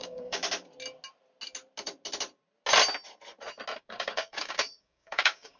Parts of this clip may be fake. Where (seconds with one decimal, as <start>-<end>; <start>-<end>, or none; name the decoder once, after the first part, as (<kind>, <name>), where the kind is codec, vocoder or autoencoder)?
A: 0.0-0.4 (codec, DAC); 3.8-5.6